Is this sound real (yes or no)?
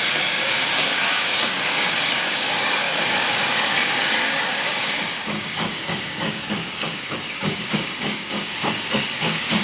no